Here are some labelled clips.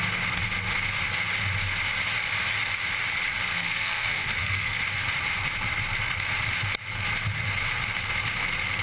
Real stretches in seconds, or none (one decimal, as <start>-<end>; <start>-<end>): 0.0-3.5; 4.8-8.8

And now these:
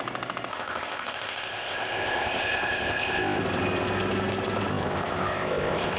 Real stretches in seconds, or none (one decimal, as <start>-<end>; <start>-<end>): 0.0-0.5; 3.4-4.7

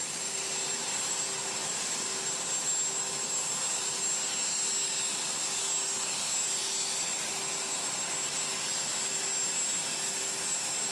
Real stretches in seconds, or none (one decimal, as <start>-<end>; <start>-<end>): 1.2-1.6; 2.1-10.9

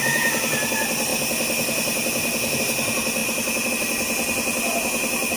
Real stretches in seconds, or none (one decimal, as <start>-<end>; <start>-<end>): 0.0-5.4

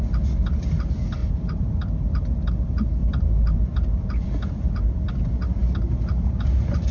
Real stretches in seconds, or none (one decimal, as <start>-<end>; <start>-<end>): 0.0-1.2; 2.5-3.0; 3.6-6.9

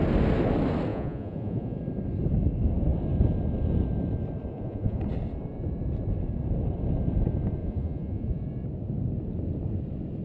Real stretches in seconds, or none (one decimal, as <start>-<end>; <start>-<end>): 0.0-0.9; 1.8-4.5; 5.0-7.6; 8.4-10.2

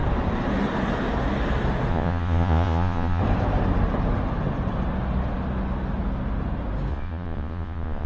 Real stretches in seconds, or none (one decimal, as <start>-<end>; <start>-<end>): 0.0-1.9; 3.2-6.9